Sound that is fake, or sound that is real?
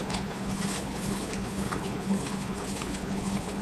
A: fake